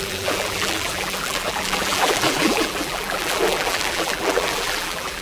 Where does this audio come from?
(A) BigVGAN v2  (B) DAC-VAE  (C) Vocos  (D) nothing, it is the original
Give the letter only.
A